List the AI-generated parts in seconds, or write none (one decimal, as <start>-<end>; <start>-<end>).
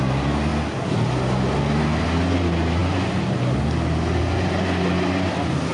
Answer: none